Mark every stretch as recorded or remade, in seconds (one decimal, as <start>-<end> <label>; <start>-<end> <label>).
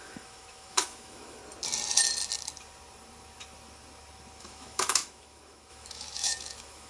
0.0-1.4 remade; 1.4-4.4 recorded; 4.4-6.9 remade